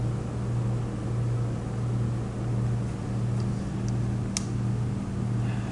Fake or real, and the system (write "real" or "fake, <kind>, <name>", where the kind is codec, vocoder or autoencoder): real